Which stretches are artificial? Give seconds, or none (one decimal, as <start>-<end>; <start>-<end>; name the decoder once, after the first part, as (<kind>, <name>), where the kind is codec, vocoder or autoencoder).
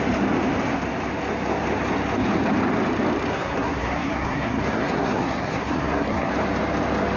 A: 3.3-6.3 (codec, SNAC)